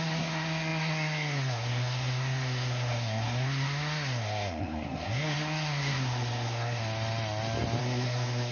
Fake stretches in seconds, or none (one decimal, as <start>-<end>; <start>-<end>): 0.0-6.8; 7.8-8.5